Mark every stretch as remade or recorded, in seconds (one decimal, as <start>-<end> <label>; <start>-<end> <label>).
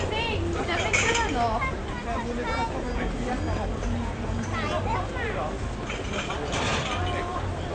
0.0-7.7 recorded